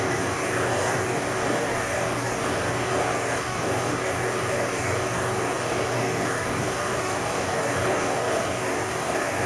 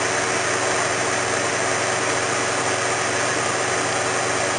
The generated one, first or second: first